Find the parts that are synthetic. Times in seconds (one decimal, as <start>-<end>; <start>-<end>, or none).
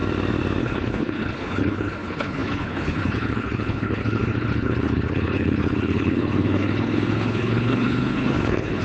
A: 0.6-8.8